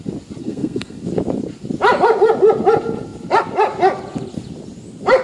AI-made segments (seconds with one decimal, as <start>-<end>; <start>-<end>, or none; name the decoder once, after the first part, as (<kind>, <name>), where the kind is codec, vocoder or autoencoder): 0.4-1.0 (codec, SNAC)